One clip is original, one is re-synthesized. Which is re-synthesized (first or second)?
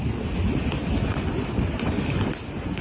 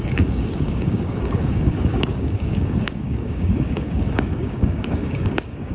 second